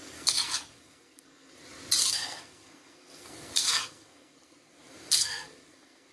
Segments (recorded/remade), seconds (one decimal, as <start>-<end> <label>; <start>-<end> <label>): 0.0-1.6 remade; 1.6-2.0 recorded; 2.0-6.1 remade